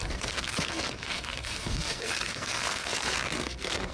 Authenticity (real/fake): fake